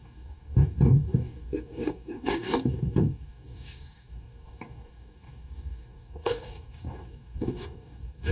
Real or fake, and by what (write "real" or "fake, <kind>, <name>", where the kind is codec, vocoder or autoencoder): fake, codec, DAC